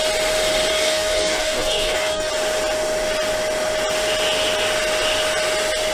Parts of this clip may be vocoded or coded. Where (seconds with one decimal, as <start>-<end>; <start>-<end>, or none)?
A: 0.7-2.3